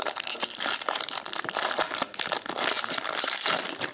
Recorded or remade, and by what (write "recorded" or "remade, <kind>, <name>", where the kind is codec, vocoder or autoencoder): recorded